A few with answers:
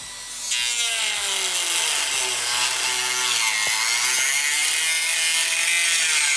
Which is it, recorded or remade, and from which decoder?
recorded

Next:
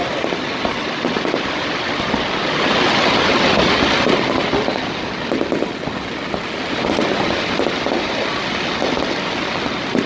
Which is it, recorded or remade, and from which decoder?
recorded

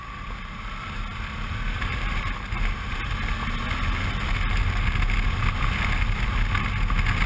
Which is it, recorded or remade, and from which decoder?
recorded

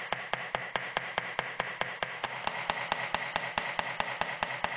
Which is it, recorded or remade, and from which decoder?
recorded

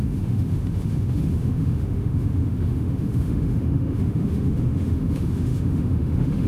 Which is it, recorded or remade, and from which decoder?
remade, autoencoder, DAC-VAE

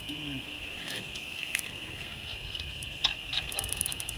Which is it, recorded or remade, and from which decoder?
remade, codec, SNAC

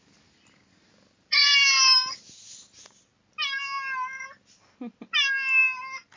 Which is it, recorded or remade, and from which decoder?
recorded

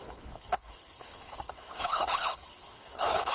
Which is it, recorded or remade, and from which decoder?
remade, codec, HILCodec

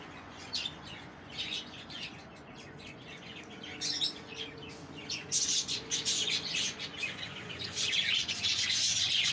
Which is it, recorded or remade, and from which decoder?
remade, vocoder, Vocos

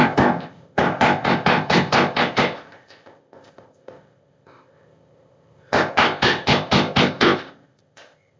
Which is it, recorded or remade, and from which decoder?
remade, codec, ZipCodec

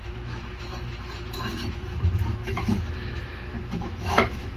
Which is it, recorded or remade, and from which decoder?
remade, autoencoder, DAC-VAE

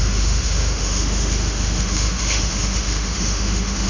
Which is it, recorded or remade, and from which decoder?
remade, autoencoder, DAC-VAE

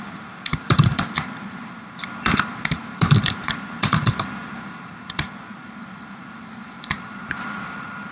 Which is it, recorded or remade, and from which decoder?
remade, vocoder, BigVGAN v2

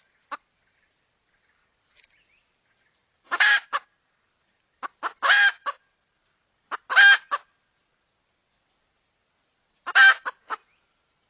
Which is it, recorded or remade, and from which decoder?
recorded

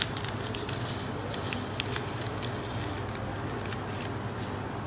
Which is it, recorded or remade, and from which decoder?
recorded